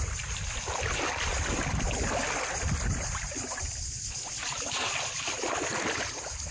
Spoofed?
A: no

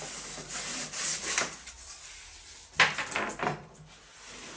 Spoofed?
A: no